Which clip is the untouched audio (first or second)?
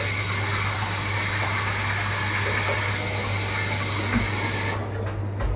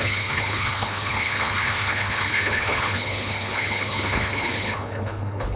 first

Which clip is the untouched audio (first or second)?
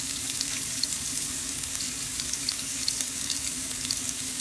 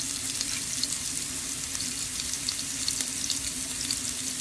second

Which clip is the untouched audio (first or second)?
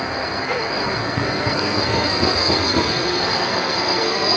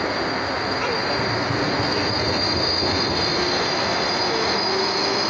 second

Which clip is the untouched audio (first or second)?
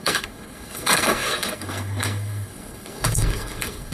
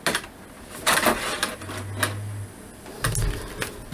second